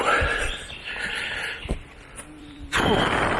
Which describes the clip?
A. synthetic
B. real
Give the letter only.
B